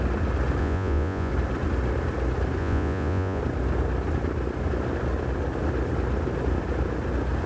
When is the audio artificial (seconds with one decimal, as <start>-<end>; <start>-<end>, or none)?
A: 0.6-1.3; 2.6-3.4